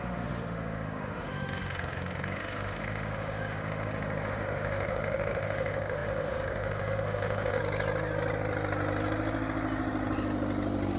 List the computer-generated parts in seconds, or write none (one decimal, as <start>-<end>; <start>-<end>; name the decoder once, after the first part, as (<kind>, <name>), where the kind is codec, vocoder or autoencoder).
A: 0.0-7.6 (autoencoder, DAC-VAE)